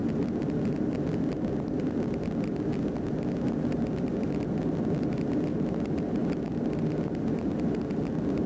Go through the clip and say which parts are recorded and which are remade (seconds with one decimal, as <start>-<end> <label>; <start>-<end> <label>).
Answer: 0.0-8.5 recorded